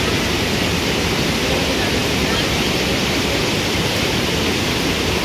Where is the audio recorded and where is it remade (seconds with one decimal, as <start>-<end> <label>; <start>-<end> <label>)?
0.0-2.0 recorded; 2.0-5.2 remade